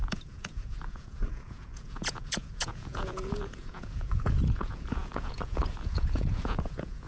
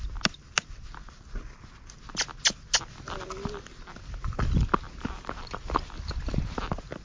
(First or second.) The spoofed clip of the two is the first